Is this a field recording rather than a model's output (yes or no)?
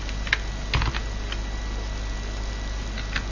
yes